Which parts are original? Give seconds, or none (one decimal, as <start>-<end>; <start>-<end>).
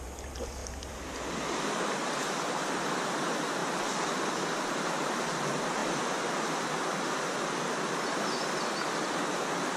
0.0-9.8